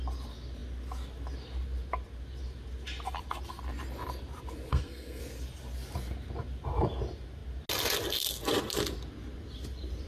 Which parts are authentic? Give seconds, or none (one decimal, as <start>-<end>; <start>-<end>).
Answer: 0.0-4.7; 5.2-10.1

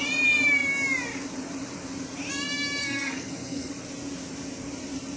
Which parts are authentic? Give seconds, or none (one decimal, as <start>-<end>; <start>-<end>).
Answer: 0.0-2.8; 3.7-5.2

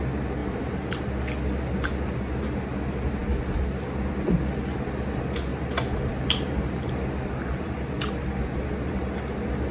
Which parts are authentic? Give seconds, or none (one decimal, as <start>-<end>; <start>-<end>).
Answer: 0.0-0.4; 1.1-5.5; 6.9-9.7

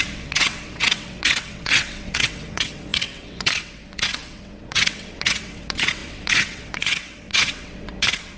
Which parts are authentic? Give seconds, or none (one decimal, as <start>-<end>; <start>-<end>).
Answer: none

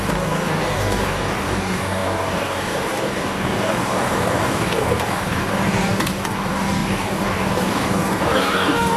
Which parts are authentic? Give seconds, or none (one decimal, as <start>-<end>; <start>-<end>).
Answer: none